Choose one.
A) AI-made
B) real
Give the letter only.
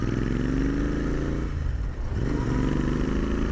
B